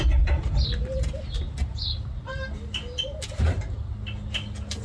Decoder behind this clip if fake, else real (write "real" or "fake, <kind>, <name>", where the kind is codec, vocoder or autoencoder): real